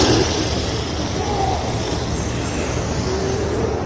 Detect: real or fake real